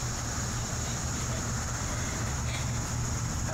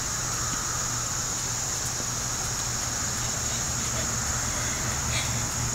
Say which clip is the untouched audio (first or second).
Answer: second